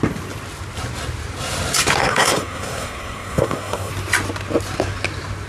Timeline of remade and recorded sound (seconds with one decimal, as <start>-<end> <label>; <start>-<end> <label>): 0.0-2.0 recorded; 2.0-3.9 remade; 3.9-5.5 recorded